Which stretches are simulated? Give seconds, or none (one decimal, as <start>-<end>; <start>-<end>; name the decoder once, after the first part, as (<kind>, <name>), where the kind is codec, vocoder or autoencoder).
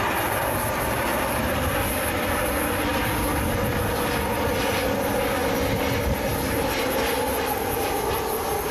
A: none